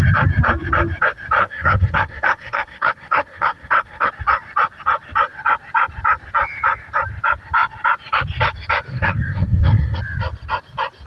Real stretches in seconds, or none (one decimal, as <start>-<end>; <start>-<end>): 0.0-1.4; 4.1-8.9; 10.0-11.1